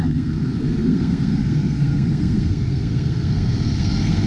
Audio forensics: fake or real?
fake